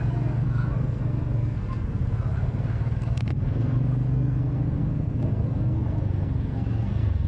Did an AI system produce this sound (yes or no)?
yes